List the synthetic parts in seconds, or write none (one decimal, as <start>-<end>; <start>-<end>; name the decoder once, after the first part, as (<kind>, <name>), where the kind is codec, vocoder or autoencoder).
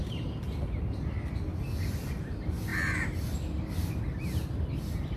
none